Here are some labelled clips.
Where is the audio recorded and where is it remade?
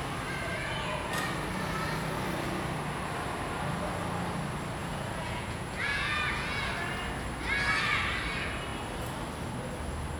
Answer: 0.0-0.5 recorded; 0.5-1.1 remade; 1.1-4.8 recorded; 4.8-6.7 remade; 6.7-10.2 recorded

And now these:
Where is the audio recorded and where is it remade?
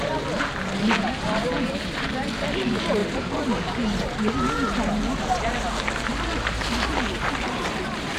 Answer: 0.0-8.2 remade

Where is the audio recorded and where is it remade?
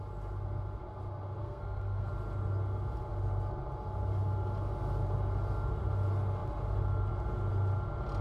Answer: 0.0-1.4 recorded; 1.4-2.1 remade; 2.1-8.2 recorded